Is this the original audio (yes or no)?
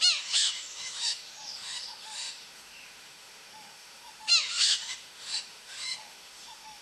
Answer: no